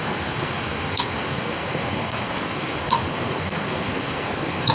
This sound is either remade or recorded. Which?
remade